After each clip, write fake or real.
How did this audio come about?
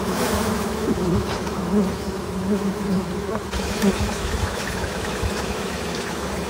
fake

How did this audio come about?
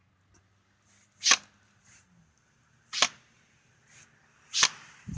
real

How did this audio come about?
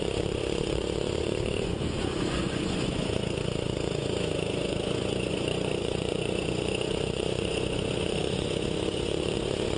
fake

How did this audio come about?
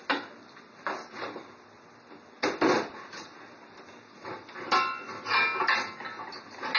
real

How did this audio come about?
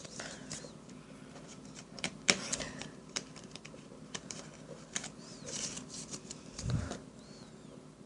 fake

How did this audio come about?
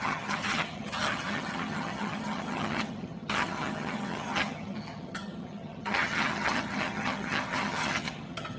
fake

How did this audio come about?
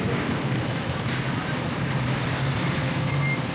real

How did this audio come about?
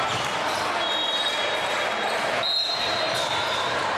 real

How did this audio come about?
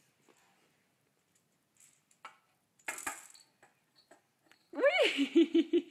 real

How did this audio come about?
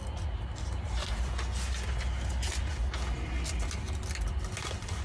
real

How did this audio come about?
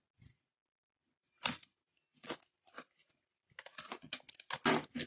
real